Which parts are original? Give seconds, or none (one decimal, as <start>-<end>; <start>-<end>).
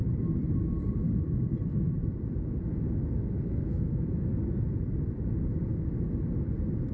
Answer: 0.0-3.0; 4.0-6.9